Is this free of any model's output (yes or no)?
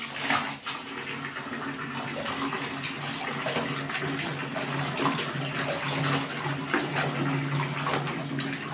yes